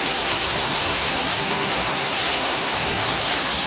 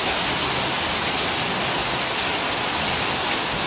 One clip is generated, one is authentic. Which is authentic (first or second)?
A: second